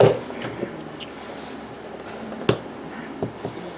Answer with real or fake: real